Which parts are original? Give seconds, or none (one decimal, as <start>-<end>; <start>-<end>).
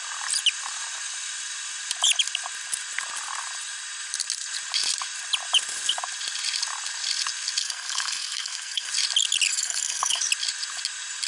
0.0-7.6; 8.9-9.5; 10.2-11.3